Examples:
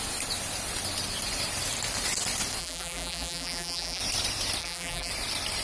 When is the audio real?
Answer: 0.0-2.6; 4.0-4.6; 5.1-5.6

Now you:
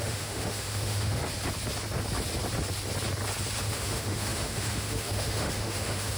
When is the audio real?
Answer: 1.2-3.6

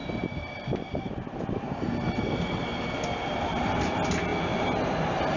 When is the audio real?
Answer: 2.9-5.4

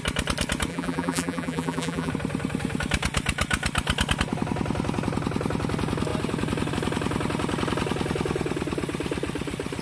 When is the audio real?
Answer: 0.0-0.7; 2.1-9.8

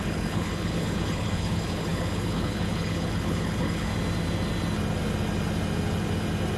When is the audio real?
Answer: 3.9-6.6

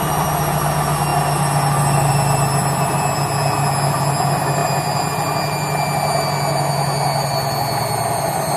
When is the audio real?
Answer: 0.0-8.6

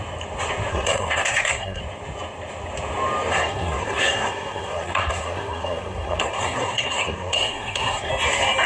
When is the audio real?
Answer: 0.0-0.7; 1.8-3.3; 8.1-8.7

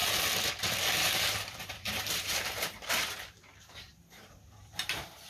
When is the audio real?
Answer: 0.0-0.8